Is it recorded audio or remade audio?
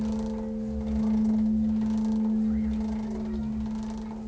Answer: recorded